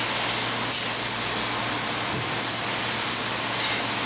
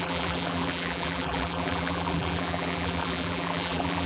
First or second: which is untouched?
first